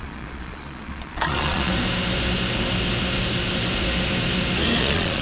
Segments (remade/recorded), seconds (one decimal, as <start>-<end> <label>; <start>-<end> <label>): 0.0-1.7 remade; 1.7-4.8 recorded; 4.8-5.2 remade